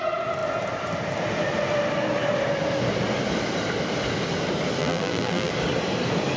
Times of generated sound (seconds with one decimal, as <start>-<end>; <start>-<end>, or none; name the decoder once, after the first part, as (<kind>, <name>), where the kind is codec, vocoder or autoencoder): 4.8-5.5 (vocoder, BigVGAN v2)